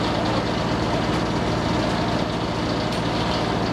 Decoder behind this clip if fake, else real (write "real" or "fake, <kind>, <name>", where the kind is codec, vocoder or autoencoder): real